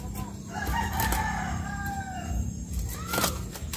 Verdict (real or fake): real